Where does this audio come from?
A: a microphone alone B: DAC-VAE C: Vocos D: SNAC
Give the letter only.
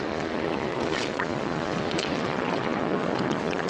C